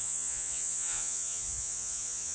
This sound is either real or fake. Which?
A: fake